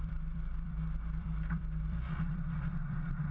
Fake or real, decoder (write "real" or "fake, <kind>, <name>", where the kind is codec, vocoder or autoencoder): fake, vocoder, BigVGAN v2